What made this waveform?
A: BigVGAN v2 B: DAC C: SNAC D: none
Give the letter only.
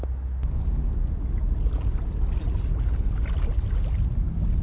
D